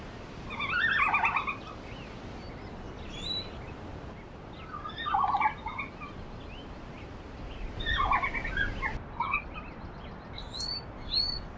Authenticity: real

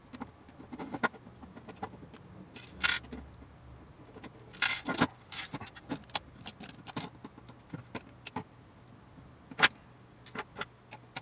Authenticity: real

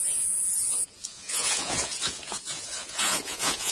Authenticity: fake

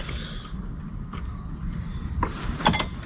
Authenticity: real